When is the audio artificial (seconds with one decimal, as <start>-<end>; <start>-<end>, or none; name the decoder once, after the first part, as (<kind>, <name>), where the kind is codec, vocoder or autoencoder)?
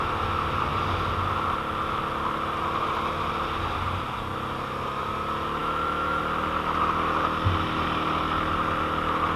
5.6-6.2 (autoencoder, DAC-VAE)